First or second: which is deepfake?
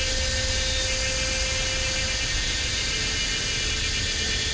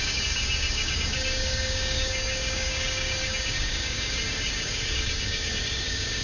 second